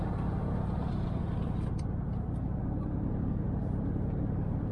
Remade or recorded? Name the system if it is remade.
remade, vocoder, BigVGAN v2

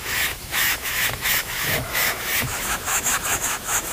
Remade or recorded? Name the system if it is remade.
remade, autoencoder, DAC-VAE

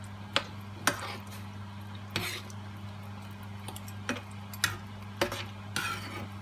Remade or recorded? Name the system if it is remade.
recorded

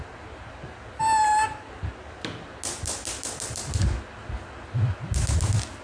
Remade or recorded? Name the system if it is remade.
recorded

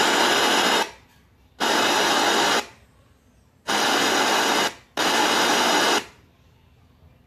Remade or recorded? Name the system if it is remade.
recorded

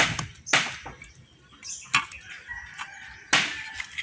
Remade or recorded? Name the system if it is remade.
recorded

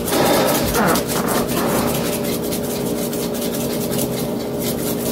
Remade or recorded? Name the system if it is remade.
recorded